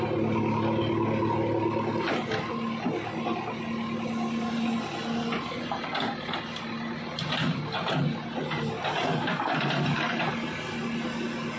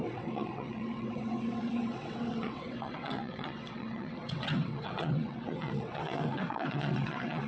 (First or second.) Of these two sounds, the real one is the first